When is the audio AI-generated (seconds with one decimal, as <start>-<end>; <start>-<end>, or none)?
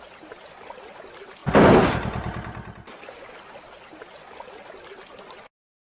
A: none